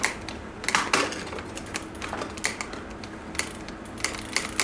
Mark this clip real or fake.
real